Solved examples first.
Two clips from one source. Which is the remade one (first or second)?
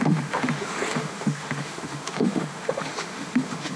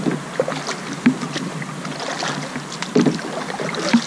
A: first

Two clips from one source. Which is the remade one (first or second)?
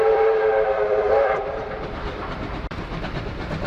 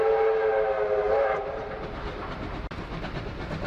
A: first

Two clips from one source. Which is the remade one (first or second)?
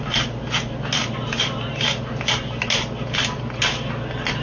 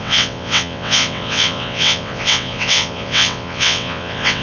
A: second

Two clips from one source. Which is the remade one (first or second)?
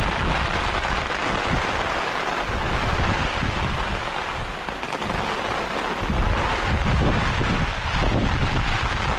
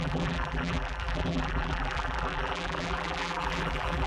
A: second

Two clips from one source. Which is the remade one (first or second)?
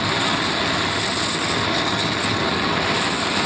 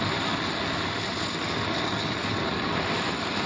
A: second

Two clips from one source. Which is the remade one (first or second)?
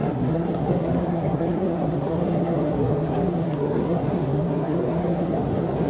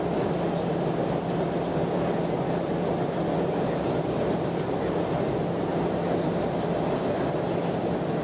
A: first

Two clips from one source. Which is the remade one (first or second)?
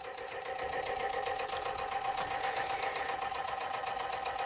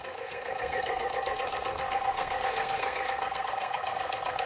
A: second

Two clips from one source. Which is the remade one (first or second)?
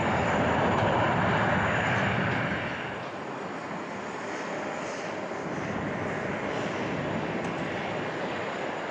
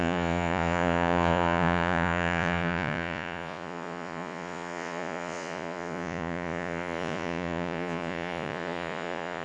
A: second